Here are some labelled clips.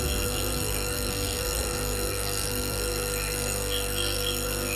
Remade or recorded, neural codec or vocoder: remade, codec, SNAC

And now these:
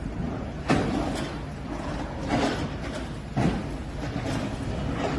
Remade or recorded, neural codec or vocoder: recorded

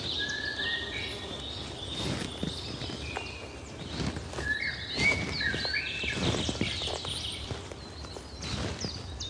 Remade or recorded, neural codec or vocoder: recorded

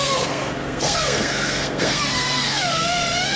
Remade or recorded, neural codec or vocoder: remade, codec, SNAC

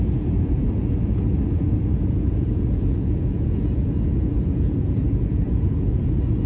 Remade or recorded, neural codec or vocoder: remade, vocoder, Vocos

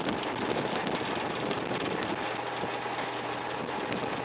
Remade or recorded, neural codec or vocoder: recorded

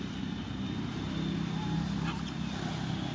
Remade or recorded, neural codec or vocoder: recorded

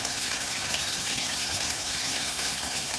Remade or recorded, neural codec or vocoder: remade, codec, SNAC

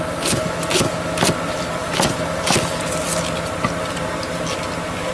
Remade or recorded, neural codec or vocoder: recorded